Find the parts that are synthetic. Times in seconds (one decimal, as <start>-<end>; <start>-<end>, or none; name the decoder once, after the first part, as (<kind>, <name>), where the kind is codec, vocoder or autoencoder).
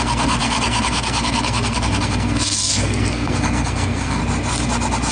0.0-4.2 (codec, SNAC)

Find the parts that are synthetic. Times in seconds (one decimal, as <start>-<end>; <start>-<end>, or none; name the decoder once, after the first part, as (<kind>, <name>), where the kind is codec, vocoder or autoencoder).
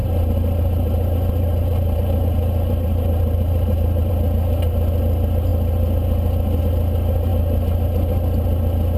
0.0-4.1 (vocoder, BigVGAN v2)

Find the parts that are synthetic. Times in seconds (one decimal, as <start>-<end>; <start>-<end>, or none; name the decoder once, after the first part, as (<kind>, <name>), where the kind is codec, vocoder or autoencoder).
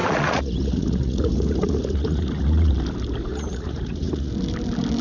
0.0-2.7 (vocoder, Vocos); 3.3-4.3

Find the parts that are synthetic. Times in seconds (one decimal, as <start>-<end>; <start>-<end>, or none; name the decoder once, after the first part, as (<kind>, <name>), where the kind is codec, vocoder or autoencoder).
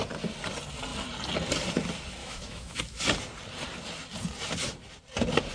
2.2-3.0 (autoencoder, DAC-VAE)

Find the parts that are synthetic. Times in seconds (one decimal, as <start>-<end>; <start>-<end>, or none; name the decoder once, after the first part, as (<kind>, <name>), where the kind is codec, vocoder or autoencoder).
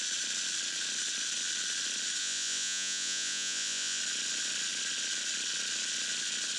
2.2-4.0 (vocoder, Vocos)